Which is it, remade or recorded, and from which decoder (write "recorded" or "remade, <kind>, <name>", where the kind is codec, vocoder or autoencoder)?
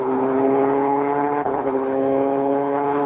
remade, codec, HILCodec